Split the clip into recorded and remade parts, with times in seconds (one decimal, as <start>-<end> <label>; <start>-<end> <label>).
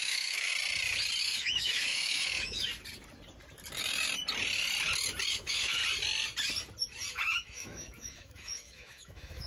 0.0-0.5 remade; 0.5-1.2 recorded; 1.2-2.7 remade; 2.7-5.3 recorded; 5.3-5.8 remade; 5.8-7.1 recorded; 7.1-9.5 remade